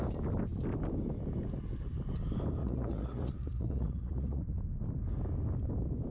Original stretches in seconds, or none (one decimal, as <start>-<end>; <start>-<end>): 0.0-2.6; 4.5-6.1